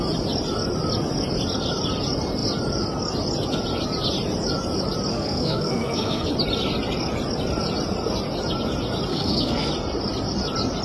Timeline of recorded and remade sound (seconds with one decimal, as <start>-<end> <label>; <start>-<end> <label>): 0.0-5.1 recorded; 5.1-6.3 remade; 6.3-9.1 recorded; 9.1-9.7 remade; 9.7-10.8 recorded